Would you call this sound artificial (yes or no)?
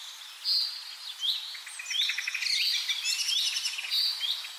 no